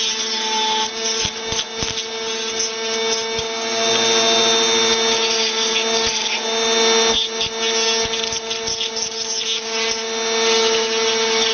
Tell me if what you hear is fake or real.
real